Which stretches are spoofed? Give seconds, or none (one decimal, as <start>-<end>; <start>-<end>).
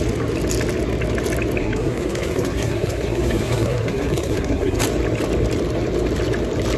1.6-4.8